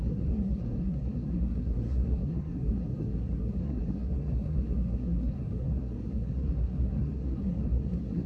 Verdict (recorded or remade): remade